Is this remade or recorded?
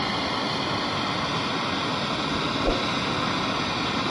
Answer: recorded